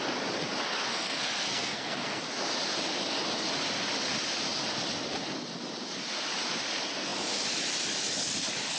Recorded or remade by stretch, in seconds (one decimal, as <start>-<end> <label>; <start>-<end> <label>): 0.0-0.9 recorded; 0.9-2.2 remade; 2.2-8.8 recorded